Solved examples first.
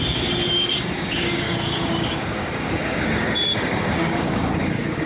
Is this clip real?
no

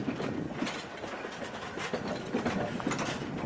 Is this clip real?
yes